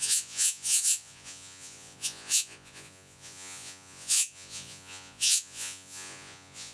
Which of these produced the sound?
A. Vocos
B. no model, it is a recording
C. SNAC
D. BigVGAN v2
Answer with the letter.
A